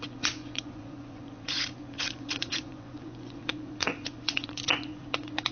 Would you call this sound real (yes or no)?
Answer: no